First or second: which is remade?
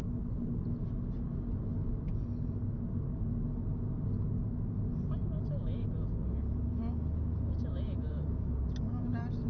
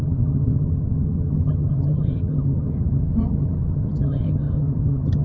second